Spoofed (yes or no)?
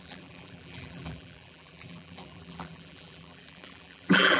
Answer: yes